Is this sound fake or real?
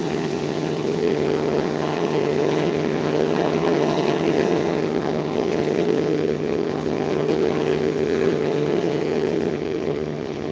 fake